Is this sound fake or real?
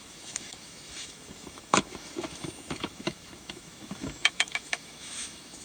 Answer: fake